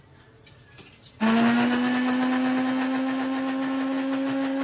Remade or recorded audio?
recorded